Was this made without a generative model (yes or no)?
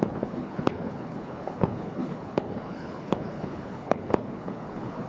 no